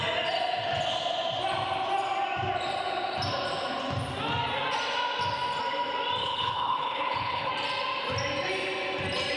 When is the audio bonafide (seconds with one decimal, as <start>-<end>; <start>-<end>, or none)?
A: 0.0-6.2; 7.5-9.4

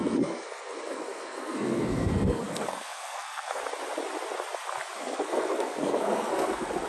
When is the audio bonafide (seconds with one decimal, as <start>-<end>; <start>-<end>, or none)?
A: 3.6-5.0

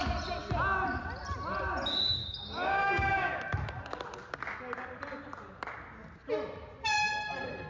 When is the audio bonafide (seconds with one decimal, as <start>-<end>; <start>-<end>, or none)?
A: 0.0-2.2; 3.4-7.7

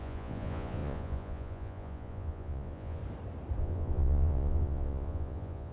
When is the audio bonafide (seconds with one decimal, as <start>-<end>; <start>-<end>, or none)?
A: 3.0-3.6

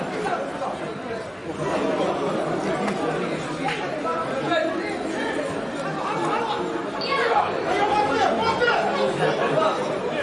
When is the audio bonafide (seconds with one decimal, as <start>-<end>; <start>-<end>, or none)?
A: 0.0-10.2

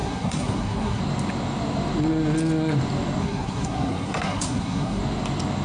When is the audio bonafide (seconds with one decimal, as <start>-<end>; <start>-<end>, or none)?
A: 1.0-3.2; 5.0-5.6